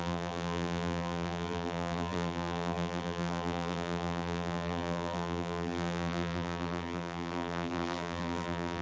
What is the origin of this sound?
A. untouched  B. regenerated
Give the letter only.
B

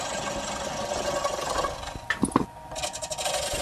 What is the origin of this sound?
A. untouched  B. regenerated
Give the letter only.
A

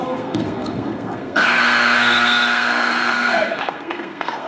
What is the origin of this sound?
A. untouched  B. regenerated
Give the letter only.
B